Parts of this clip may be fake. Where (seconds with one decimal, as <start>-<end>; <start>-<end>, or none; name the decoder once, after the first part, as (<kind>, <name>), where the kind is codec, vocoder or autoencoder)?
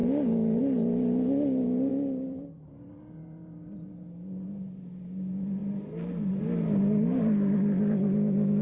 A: 1.9-2.9 (vocoder, BigVGAN v2)